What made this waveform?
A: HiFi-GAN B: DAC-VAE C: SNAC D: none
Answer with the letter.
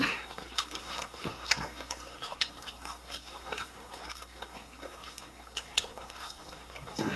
C